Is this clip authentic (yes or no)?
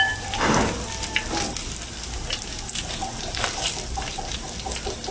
yes